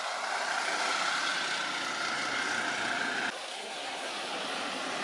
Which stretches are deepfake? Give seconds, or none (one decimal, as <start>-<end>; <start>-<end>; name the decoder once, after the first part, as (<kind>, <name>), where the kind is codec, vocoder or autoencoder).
3.5-4.1 (codec, SNAC)

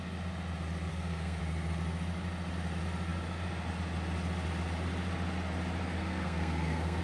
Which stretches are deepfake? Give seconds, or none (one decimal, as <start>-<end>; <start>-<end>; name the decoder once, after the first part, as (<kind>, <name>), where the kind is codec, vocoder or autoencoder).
0.9-1.4 (codec, SNAC); 6.0-7.0